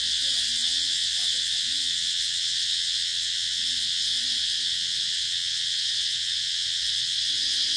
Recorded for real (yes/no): no